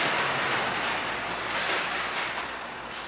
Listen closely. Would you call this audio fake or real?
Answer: real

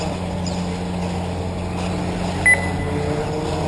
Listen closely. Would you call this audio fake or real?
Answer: real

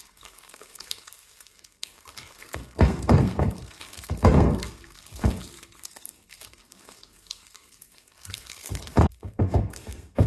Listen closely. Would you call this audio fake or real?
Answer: fake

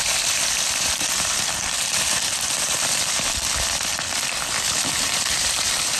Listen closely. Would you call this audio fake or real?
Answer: fake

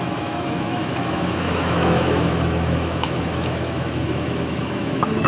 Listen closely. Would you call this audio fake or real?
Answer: fake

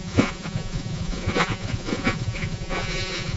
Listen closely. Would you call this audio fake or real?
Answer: fake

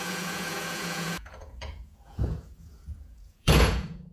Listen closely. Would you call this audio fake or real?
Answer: fake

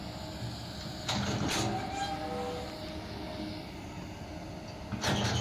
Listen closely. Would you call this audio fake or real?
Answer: real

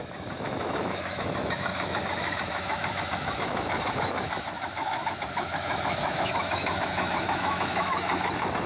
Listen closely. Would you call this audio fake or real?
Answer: fake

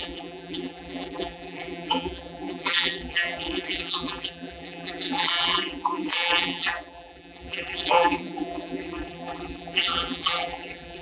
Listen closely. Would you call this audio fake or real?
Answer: fake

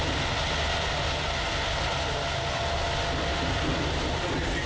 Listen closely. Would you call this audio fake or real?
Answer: real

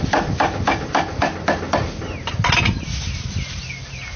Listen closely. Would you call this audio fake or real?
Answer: real